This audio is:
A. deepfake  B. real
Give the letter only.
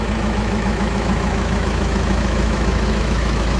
A